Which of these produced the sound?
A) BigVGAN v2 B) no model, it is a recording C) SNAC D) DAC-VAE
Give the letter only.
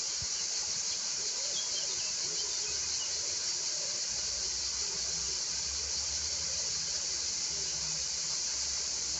B